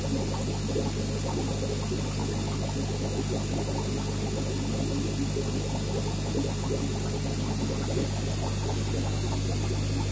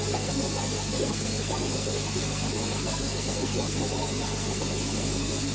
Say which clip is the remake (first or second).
second